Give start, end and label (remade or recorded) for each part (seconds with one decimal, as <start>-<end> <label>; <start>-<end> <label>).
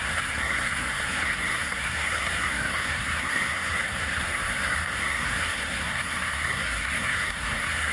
0.0-7.9 remade